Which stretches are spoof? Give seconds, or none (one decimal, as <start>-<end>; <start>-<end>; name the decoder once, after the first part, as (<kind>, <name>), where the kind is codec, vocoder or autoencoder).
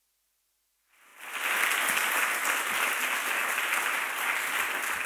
none